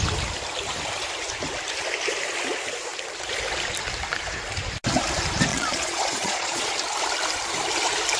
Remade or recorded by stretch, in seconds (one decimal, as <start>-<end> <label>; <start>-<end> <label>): 0.0-5.5 recorded; 5.5-6.7 remade; 6.7-8.2 recorded

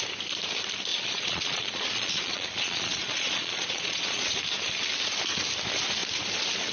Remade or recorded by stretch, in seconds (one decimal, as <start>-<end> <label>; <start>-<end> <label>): 0.0-0.9 recorded; 0.9-4.4 remade; 4.4-6.7 recorded

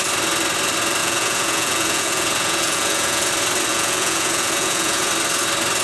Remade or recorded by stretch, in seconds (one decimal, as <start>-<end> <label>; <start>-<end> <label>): 0.0-1.0 recorded; 1.0-3.3 remade; 3.3-3.7 recorded; 3.7-5.1 remade; 5.1-5.8 recorded